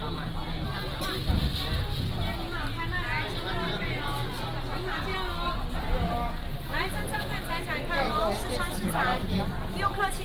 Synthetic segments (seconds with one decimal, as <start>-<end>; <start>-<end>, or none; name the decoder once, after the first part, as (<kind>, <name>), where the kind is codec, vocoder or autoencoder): none